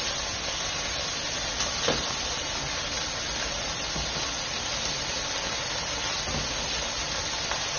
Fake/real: real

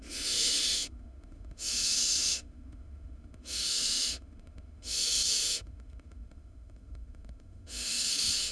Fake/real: fake